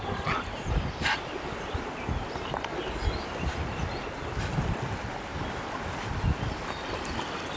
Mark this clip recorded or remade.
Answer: recorded